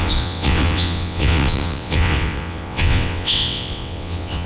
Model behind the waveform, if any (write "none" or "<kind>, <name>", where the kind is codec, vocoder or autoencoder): vocoder, WaveNeXt